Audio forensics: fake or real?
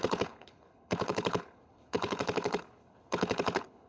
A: fake